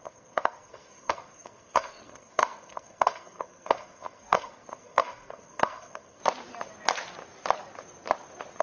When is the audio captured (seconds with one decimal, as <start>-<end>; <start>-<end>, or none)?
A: 6.2-8.6